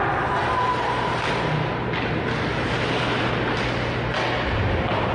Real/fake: real